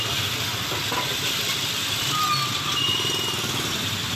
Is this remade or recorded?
recorded